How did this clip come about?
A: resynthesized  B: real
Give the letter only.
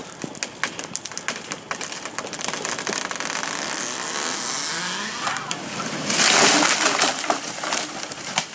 B